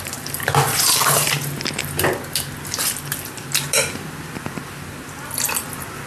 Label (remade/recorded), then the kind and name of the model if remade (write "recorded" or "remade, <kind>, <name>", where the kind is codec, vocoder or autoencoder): recorded